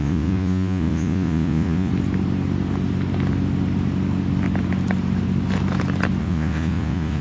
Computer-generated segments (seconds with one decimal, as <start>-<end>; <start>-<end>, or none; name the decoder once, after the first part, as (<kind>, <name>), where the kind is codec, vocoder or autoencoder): 0.0-1.9 (vocoder, Vocos); 6.2-7.2